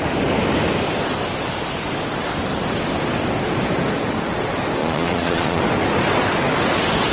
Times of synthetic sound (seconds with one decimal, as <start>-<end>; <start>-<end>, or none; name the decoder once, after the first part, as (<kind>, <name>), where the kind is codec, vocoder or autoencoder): 4.8-5.6 (vocoder, Vocos)